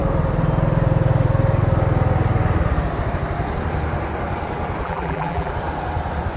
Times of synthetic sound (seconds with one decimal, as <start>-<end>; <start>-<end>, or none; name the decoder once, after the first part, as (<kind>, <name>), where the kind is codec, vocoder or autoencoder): 4.8-5.5 (vocoder, BigVGAN v2)